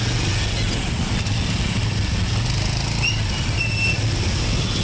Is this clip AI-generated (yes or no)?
no